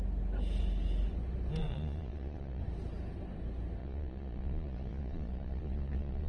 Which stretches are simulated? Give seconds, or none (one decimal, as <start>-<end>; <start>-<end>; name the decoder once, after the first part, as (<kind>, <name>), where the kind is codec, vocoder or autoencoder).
1.6-2.6 (vocoder, Vocos); 3.8-6.3